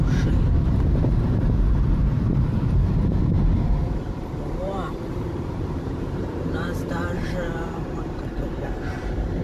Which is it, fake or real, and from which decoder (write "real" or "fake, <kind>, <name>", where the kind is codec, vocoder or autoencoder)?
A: fake, vocoder, BigVGAN v2